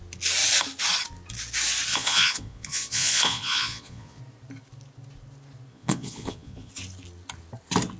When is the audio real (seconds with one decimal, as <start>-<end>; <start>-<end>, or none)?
0.0-1.9; 4.2-5.7; 6.7-8.0